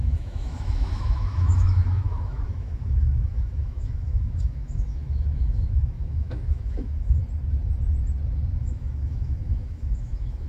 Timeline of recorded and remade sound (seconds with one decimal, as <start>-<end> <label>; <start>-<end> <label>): 0.0-7.2 remade; 7.2-8.6 recorded; 8.6-10.5 remade